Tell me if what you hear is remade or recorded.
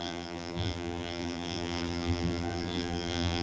remade